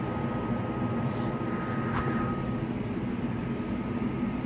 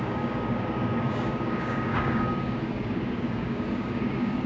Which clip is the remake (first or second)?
second